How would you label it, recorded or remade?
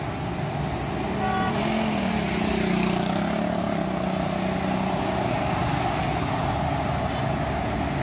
recorded